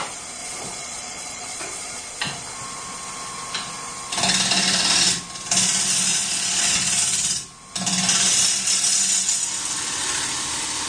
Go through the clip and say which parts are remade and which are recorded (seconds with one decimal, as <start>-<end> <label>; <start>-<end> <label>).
0.0-0.4 recorded; 0.4-2.0 remade; 2.0-6.1 recorded; 6.1-7.0 remade; 7.0-10.9 recorded